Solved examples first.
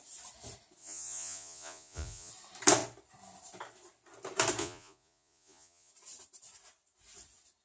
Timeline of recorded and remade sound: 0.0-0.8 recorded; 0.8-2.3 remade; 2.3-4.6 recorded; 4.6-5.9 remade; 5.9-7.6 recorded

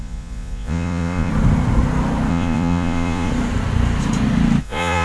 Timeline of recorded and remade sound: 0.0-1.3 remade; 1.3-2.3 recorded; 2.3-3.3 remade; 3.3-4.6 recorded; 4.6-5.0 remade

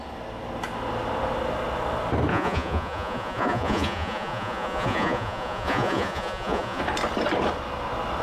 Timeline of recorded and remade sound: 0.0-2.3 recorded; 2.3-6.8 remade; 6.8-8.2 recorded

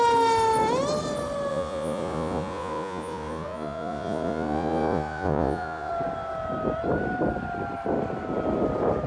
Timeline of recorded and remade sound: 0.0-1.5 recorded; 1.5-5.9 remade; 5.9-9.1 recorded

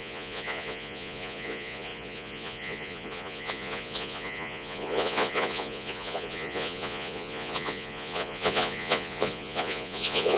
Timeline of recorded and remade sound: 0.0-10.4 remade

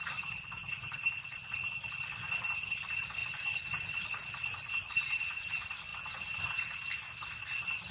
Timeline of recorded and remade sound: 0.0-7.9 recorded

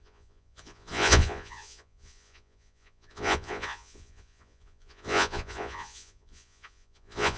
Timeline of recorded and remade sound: 0.0-7.4 remade

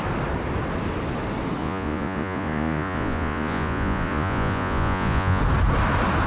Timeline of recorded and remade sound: 0.0-1.6 recorded; 1.6-5.4 remade; 5.4-6.3 recorded